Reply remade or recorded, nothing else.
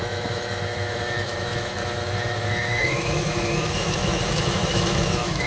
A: remade